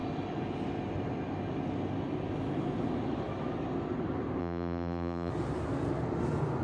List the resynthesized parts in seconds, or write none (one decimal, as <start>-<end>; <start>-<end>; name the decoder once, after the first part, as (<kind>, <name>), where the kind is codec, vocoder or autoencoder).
4.4-5.3 (vocoder, BigVGAN v2)